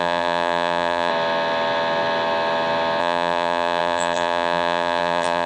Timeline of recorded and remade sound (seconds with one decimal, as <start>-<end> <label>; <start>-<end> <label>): 0.0-1.1 remade; 1.1-3.0 recorded; 3.0-5.5 remade